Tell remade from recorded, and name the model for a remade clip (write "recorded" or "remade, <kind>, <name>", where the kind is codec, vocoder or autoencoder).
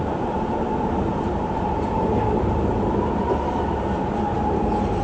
remade, vocoder, BigVGAN v2